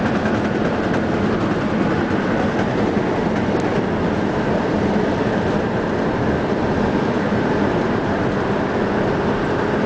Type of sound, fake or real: real